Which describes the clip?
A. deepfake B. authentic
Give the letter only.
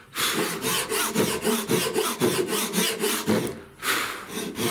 B